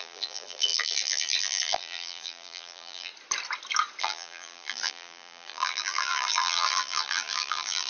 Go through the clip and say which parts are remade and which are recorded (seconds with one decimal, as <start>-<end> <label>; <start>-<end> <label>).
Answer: 0.0-3.1 remade; 3.1-4.0 recorded; 4.0-7.9 remade